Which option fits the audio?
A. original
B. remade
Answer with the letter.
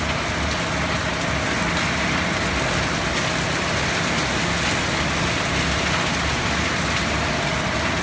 A